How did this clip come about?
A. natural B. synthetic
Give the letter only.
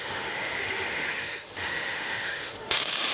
B